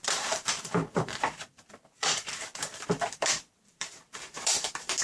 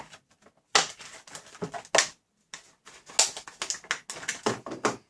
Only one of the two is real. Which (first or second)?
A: second